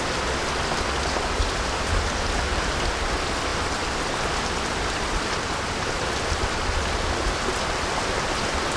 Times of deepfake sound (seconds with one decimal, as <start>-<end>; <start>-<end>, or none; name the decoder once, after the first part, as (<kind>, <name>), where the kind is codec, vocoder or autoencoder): none